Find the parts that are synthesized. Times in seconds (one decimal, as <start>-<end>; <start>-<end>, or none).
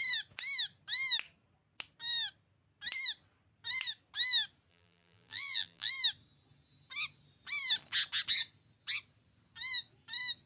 4.7-5.9